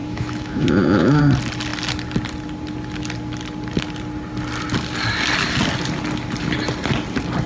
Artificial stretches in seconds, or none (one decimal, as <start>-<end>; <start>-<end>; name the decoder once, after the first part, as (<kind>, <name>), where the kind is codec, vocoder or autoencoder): 0.0-1.2 (autoencoder, DAC-VAE)